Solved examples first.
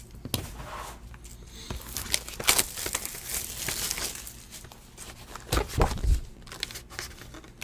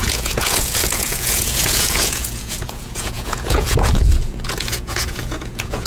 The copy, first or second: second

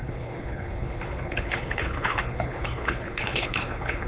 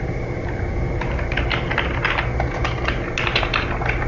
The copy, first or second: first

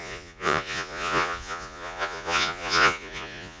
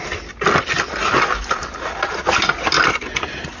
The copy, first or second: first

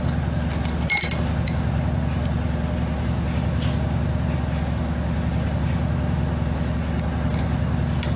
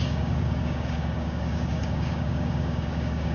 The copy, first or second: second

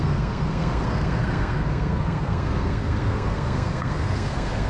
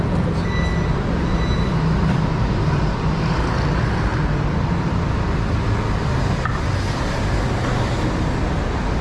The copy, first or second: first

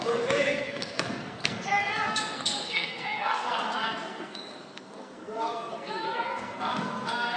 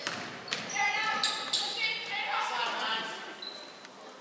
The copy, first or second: first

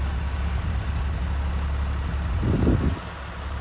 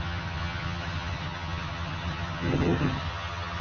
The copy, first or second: second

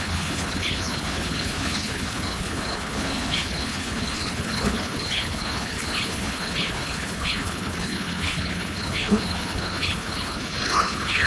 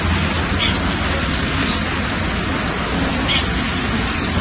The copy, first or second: first